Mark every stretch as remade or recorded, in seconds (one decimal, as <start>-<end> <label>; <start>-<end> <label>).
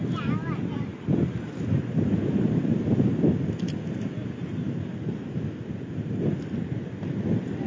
0.0-7.7 recorded